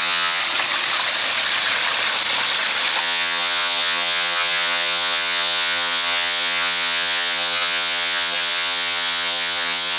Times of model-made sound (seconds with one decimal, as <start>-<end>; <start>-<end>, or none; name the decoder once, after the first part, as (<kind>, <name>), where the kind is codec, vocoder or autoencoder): 0.0-0.4 (vocoder, HiFi-GAN); 3.0-10.0